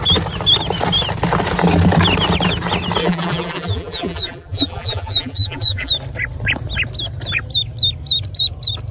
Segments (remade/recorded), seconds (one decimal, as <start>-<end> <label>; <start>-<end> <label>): 0.0-3.0 recorded; 3.0-5.9 remade; 5.9-8.9 recorded